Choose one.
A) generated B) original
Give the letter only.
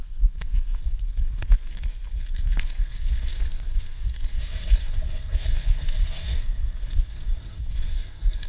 A